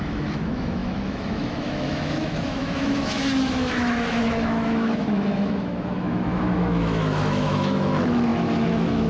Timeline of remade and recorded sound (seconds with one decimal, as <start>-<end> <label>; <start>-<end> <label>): 0.0-9.1 remade